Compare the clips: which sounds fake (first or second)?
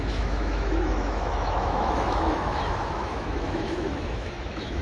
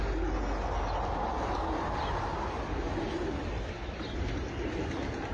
first